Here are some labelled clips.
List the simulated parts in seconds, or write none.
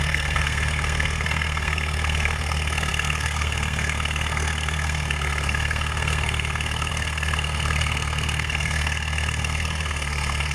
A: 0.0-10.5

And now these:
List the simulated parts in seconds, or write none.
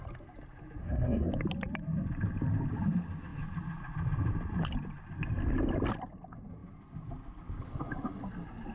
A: 0.8-1.3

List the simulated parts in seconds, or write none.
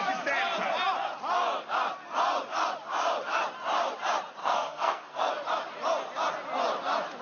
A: 4.4-5.3